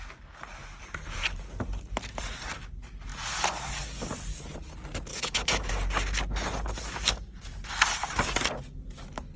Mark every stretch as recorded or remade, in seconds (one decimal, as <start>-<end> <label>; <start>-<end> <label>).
0.0-5.1 recorded; 5.1-5.7 remade; 5.7-9.4 recorded